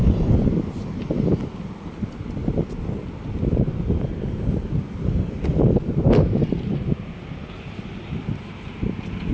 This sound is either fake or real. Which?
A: real